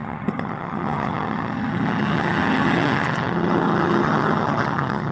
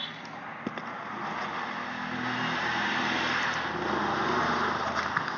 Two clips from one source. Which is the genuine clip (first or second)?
second